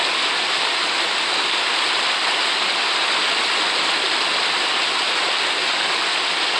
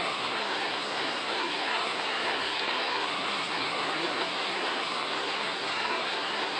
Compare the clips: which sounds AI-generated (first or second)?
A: second